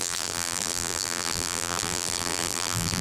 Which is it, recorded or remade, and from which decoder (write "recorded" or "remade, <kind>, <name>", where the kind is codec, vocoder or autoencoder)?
remade, vocoder, BigVGAN v2